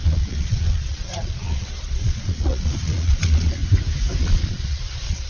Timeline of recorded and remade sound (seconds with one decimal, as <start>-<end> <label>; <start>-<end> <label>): 0.0-3.6 remade; 3.6-4.2 recorded; 4.2-5.3 remade